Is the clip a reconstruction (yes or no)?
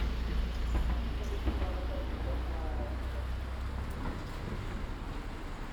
no